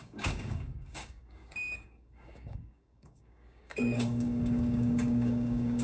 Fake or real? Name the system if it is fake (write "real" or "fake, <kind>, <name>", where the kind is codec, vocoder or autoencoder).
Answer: fake, codec, DAC